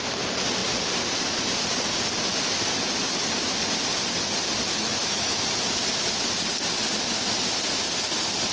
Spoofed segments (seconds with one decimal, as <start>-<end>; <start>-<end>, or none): 2.7-3.3; 4.6-5.8